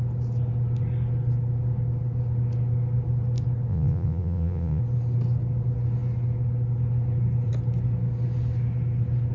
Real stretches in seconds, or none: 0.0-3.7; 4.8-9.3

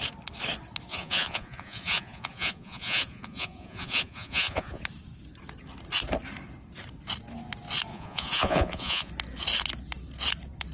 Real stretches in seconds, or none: 0.0-0.9; 4.8-7.9; 9.1-10.7

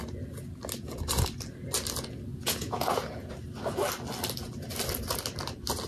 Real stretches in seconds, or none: 0.0-2.3; 3.3-5.9

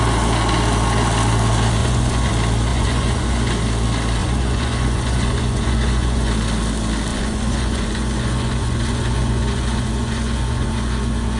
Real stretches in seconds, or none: 0.0-1.8; 2.3-2.7; 3.5-4.2; 6.3-7.1